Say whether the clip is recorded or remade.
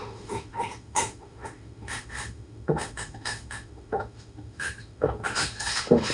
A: remade